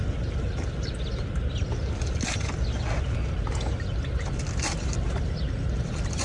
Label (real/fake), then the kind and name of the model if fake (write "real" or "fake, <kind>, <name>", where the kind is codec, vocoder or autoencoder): real